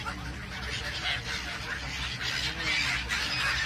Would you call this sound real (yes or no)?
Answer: yes